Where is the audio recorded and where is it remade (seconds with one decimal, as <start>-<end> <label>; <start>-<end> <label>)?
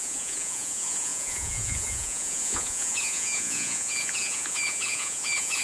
0.0-5.6 remade